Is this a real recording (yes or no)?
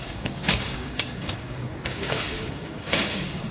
no